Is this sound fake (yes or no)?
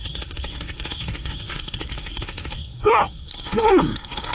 yes